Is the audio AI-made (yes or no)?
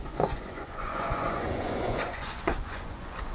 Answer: yes